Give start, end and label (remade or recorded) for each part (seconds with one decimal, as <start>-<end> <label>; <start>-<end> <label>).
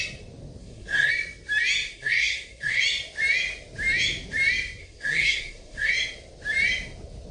0.0-0.6 recorded; 0.6-1.1 remade; 1.1-1.9 recorded; 1.9-2.8 remade; 2.8-4.8 recorded; 4.8-5.9 remade; 5.9-7.3 recorded